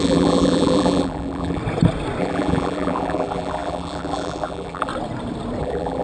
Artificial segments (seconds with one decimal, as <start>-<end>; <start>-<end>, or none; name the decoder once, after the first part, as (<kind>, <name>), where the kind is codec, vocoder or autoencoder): 0.0-1.6 (vocoder, BigVGAN v2); 2.2-4.9; 5.6-6.0